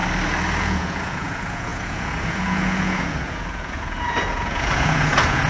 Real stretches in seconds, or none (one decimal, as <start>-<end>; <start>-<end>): 0.0-0.6